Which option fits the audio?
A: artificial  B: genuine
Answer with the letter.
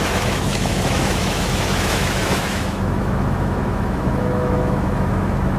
A